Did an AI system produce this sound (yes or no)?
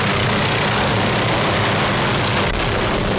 no